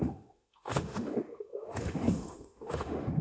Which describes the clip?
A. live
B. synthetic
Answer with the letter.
B